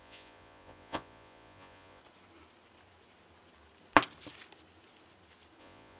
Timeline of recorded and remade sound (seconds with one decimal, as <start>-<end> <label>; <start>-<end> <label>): 0.0-2.0 remade; 2.0-5.6 recorded; 5.6-6.0 remade